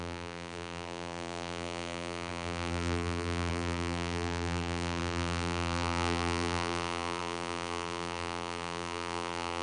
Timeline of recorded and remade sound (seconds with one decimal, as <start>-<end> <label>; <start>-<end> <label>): 0.0-9.6 remade